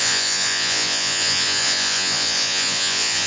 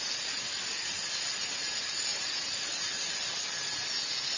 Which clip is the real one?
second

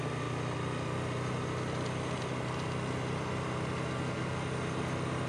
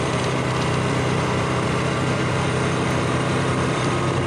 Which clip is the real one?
first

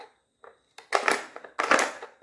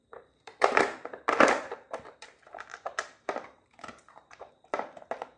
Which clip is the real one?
first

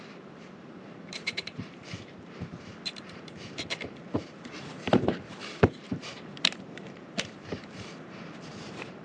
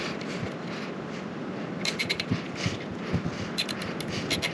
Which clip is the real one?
second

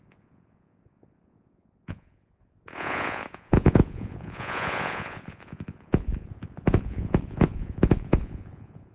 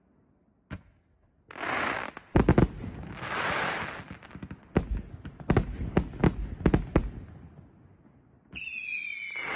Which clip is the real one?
second